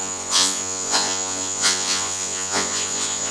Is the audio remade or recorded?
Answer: remade